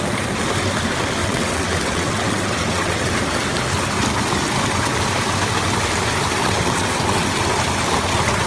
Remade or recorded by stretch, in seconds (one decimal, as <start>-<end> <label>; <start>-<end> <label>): 0.0-1.2 recorded; 1.2-3.1 remade; 3.1-6.4 recorded; 6.4-7.4 remade; 7.4-8.5 recorded